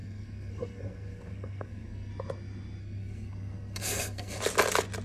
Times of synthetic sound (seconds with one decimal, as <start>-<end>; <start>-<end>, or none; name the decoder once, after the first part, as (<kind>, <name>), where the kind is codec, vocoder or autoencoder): 0.0-2.1 (codec, SNAC); 2.8-4.4